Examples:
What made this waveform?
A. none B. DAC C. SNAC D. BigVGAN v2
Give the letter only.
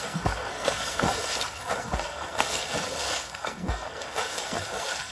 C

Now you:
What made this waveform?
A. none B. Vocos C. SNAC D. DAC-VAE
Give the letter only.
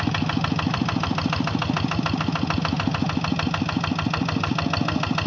A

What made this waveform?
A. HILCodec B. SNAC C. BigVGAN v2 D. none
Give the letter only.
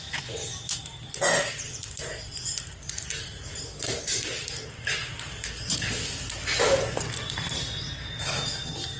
D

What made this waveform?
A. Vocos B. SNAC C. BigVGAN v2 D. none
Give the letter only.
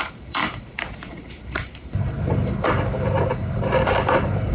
C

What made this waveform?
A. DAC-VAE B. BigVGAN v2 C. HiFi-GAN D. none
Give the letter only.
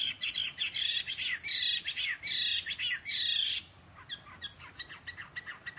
D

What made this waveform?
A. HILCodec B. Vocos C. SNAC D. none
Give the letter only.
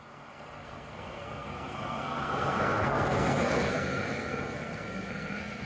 C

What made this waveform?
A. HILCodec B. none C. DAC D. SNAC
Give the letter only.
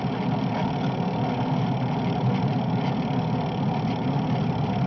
B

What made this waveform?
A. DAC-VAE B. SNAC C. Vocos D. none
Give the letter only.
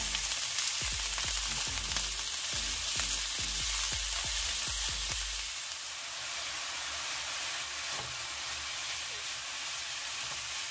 D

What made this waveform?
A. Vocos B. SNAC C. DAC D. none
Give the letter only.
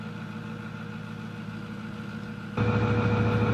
D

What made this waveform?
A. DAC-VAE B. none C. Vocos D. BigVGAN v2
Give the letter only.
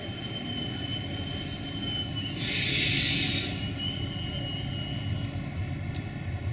B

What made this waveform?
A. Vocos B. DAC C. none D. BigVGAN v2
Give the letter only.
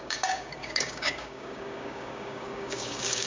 B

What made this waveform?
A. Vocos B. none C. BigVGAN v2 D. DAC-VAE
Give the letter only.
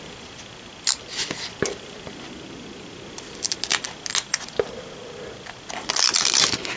B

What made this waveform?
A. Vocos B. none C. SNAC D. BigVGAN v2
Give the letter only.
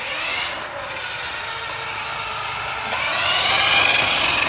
B